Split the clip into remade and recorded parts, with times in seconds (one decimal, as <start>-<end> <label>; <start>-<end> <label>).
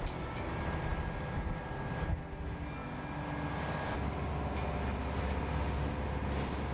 0.0-6.7 recorded